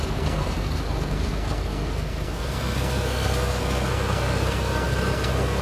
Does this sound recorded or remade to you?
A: remade